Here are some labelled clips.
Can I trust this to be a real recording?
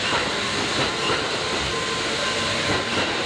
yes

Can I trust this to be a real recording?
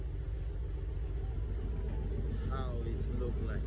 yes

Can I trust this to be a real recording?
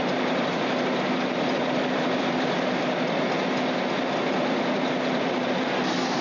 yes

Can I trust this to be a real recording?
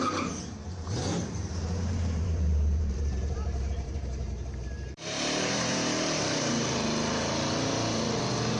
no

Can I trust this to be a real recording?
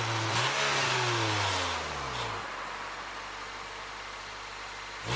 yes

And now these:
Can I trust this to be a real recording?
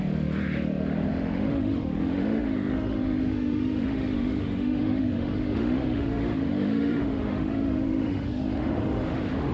no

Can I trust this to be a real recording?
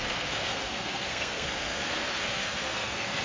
no